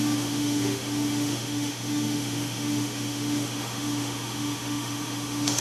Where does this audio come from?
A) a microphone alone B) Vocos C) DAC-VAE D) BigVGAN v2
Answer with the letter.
C